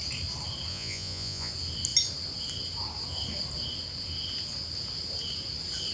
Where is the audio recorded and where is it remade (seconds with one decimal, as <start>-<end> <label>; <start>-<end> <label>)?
0.0-0.7 recorded; 0.7-1.5 remade; 1.5-5.9 recorded